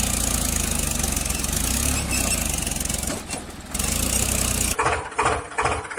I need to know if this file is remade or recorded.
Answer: recorded